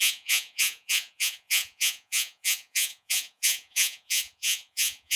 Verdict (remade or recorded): remade